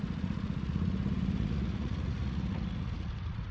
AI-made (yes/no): yes